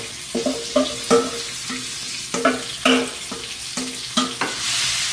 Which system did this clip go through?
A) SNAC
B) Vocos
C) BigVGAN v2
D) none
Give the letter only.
D